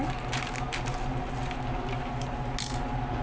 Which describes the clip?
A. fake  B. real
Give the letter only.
B